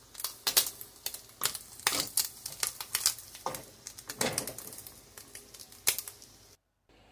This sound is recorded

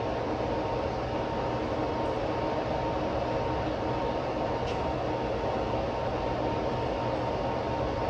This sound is recorded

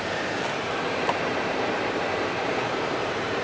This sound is remade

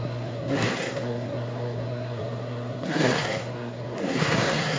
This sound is remade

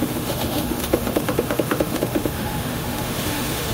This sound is remade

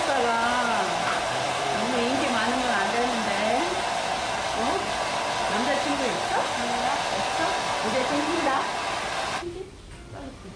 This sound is recorded